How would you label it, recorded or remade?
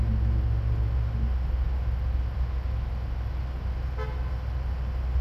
recorded